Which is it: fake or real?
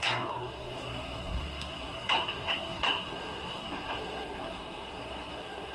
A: fake